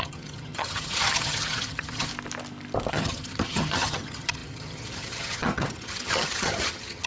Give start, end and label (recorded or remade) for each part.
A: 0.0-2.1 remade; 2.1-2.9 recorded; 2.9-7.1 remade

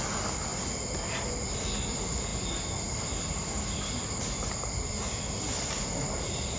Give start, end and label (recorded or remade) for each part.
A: 0.0-6.6 recorded

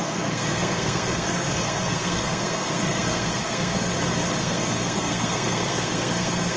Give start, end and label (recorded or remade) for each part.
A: 0.0-3.9 remade; 3.9-4.4 recorded; 4.4-6.6 remade

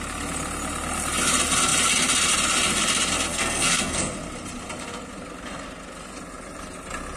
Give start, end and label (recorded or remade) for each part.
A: 0.0-3.3 recorded; 3.3-4.0 remade; 4.0-7.2 recorded

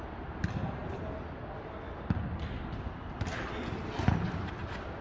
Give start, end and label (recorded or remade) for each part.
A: 0.0-5.0 recorded

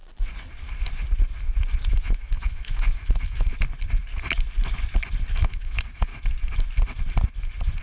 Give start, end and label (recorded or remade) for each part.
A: 0.0-1.9 recorded; 1.9-3.5 remade; 3.5-5.3 recorded; 5.3-6.1 remade; 6.1-7.8 recorded

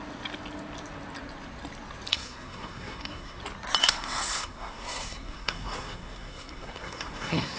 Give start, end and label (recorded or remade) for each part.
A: 0.0-2.1 recorded; 2.1-3.4 remade; 3.4-3.8 recorded; 3.8-7.6 remade

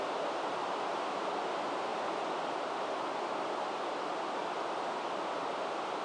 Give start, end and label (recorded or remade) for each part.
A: 0.0-6.0 recorded